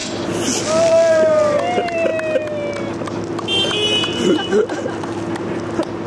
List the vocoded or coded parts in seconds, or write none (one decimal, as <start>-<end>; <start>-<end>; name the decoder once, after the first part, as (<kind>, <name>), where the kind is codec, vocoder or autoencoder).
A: none